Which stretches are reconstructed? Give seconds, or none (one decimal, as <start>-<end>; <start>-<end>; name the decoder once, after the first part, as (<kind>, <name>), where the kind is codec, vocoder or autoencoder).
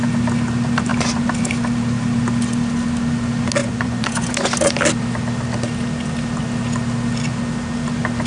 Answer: 3.6-4.3 (vocoder, Vocos)